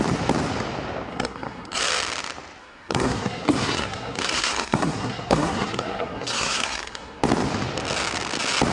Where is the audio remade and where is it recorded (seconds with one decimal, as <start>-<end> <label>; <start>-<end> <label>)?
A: 0.0-1.1 recorded; 1.1-1.8 remade; 1.8-2.6 recorded; 2.6-7.2 remade; 7.2-8.7 recorded

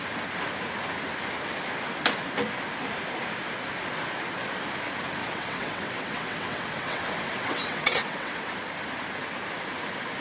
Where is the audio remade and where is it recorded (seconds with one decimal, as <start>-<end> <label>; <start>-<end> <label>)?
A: 0.0-5.2 recorded; 5.2-7.0 remade; 7.0-7.4 recorded; 7.4-8.5 remade; 8.5-10.2 recorded

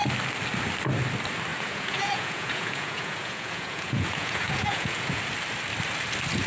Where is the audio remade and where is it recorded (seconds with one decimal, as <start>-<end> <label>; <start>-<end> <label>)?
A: 0.0-1.5 recorded; 1.5-5.2 remade; 5.2-6.5 recorded

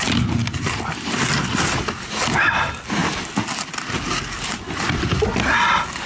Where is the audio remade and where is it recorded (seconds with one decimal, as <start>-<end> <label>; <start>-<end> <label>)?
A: 0.0-6.1 recorded

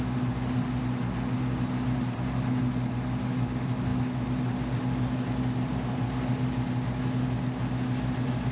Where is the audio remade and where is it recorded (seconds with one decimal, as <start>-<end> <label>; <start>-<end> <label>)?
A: 0.0-8.5 recorded

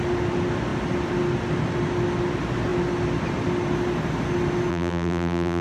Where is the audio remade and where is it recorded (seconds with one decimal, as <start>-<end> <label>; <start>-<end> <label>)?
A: 0.0-4.7 recorded; 4.7-5.6 remade

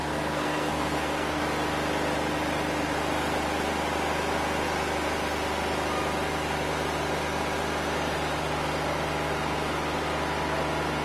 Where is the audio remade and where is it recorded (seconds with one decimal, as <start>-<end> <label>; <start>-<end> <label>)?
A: 0.0-1.4 remade; 1.4-11.0 recorded

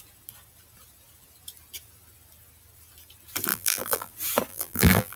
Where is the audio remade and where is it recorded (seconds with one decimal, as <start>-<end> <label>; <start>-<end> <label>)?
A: 0.0-3.5 recorded; 3.5-4.1 remade; 4.1-4.5 recorded; 4.5-5.2 remade